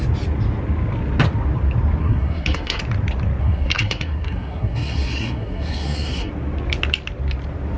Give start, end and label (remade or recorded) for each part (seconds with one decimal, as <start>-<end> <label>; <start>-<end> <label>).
0.0-2.0 recorded; 2.0-2.8 remade; 2.8-3.4 recorded; 3.4-6.3 remade; 6.3-7.8 recorded